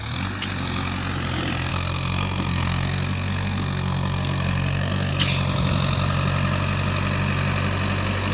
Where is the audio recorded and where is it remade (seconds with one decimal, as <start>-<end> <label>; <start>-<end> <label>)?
0.0-1.7 recorded; 1.7-5.1 remade; 5.1-8.3 recorded